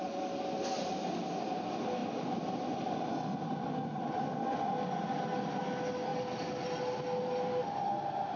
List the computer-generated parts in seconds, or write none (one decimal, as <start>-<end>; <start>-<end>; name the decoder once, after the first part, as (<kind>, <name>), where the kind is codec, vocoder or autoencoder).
none